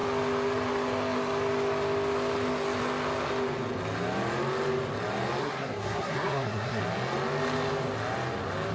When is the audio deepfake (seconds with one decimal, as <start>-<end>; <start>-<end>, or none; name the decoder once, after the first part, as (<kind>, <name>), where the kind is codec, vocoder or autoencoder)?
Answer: 5.4-6.8 (codec, SNAC)